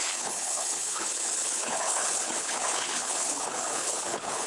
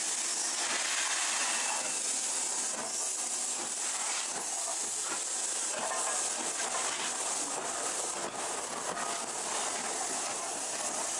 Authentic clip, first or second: second